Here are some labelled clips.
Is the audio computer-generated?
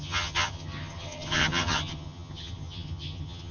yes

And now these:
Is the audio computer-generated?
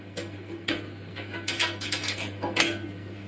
yes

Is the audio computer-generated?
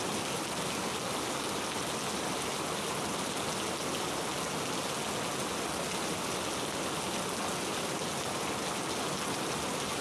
no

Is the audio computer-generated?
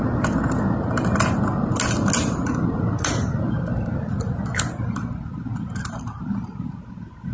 no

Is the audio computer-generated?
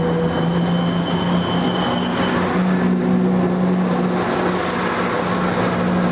no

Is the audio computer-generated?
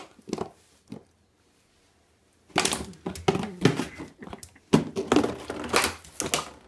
no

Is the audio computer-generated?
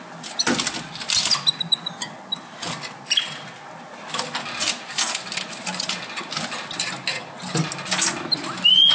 no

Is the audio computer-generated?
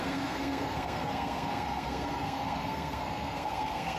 yes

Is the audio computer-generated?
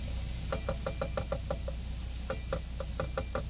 no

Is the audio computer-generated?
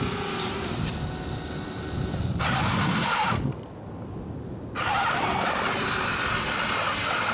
no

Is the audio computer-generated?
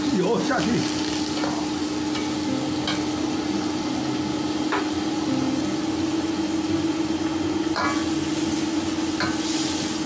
no